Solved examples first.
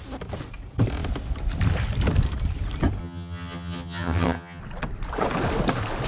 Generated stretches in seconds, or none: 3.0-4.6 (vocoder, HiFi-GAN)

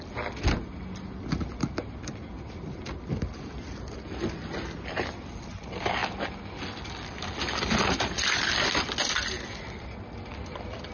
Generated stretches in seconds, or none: none

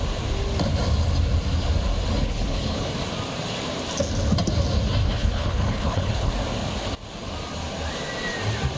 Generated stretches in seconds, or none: 2.2-2.9 (codec, HILCodec); 5.0-6.3

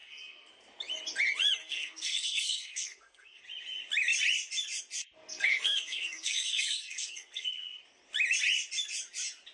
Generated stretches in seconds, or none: 0.0-0.5 (codec, SNAC); 1.6-3.4; 5.3-7.8

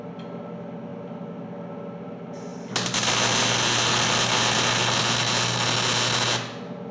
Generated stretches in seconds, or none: none

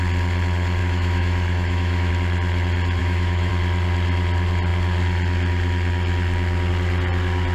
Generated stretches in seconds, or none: 0.8-2.1 (autoencoder, DAC-VAE); 3.0-3.5